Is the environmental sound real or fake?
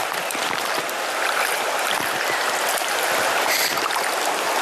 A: real